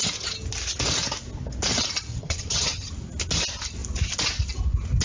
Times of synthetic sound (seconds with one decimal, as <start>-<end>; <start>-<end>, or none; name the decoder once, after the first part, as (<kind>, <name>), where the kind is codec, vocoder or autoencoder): 2.1-2.9 (vocoder, HiFi-GAN)